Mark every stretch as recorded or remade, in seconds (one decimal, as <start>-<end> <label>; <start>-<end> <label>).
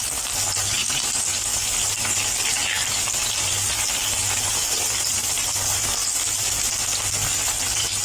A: 0.0-8.0 recorded